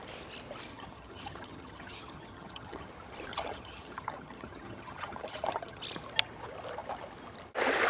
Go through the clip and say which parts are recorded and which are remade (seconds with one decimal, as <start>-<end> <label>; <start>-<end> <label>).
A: 0.0-0.7 recorded; 0.7-2.9 remade; 2.9-3.3 recorded; 3.3-5.8 remade; 5.8-7.9 recorded